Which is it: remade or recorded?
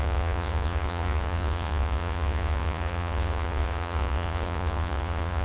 remade